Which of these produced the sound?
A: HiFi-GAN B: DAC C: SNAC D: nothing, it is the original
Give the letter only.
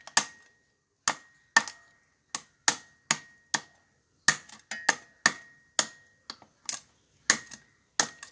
D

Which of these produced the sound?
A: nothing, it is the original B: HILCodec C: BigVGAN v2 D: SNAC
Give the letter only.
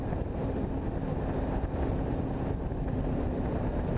A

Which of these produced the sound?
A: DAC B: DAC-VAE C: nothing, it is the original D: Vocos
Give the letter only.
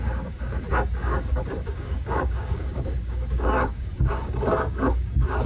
A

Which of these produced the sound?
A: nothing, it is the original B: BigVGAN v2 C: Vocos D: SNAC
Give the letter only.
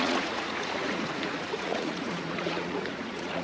C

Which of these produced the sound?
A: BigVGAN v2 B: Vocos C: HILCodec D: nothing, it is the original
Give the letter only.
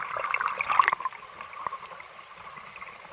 D